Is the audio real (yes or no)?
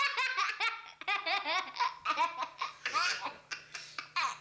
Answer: no